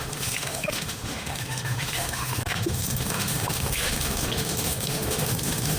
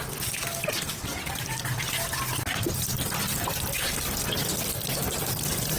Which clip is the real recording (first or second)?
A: second